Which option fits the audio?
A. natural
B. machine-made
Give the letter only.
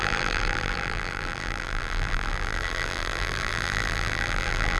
B